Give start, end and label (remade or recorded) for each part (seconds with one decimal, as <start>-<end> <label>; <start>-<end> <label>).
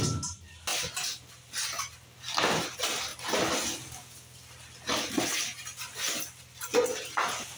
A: 0.0-7.6 recorded